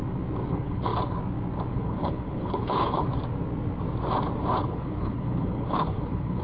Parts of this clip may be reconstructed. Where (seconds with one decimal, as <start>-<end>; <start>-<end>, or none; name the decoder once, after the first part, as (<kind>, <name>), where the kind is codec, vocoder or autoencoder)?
0.5-0.9 (codec, HILCodec); 1.7-3.1; 4.6-6.4